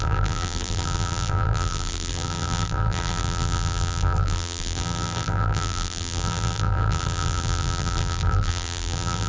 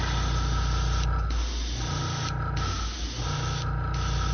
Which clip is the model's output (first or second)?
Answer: first